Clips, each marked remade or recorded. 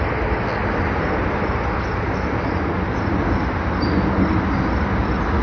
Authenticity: recorded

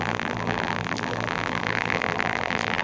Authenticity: remade